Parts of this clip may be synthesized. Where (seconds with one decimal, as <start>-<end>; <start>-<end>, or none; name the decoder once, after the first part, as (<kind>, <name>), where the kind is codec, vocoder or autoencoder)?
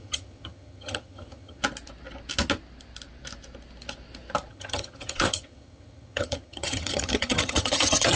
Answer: 0.0-1.6 (vocoder, HiFi-GAN); 4.5-8.2